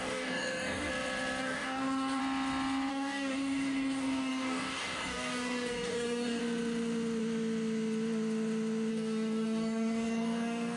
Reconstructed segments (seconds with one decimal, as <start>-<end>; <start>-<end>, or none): 0.0-0.9; 1.4-2.2; 2.9-6.4; 8.9-10.8